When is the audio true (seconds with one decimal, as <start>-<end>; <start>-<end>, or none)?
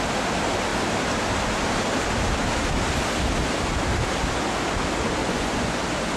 0.0-5.2; 5.8-6.2